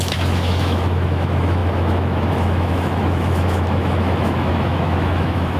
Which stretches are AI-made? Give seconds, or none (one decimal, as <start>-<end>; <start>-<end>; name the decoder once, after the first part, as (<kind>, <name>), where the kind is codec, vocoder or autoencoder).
0.0-5.6 (autoencoder, DAC-VAE)